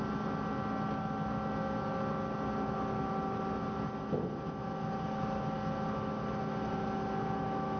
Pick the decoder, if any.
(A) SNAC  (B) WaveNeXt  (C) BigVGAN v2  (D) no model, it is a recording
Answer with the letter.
D